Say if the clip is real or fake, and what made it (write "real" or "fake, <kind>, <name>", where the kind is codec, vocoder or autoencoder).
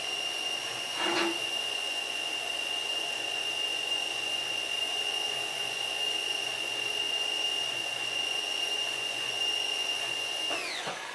fake, vocoder, Vocos